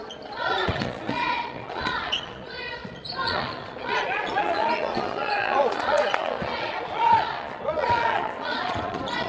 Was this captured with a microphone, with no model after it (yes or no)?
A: no